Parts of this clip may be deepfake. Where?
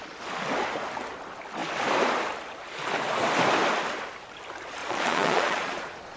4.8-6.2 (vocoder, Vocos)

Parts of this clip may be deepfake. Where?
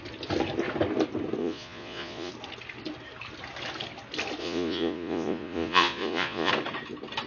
1.4-2.3 (vocoder, Vocos); 4.4-6.5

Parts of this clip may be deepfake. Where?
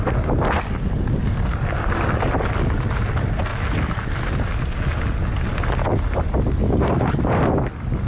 none